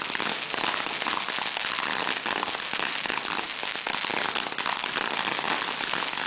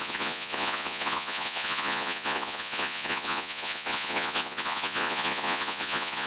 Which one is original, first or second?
first